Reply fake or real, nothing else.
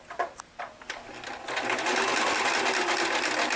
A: real